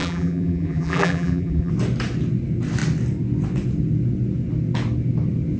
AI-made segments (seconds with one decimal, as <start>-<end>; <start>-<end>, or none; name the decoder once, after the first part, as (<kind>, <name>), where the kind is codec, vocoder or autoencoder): 0.0-1.7 (vocoder, BigVGAN v2)